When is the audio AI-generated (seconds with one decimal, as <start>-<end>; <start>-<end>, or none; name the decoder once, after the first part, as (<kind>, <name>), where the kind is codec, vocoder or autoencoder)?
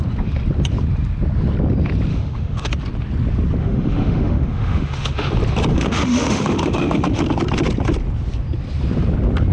2.1-2.7 (autoencoder, DAC-VAE); 3.6-5.3; 5.7-7.2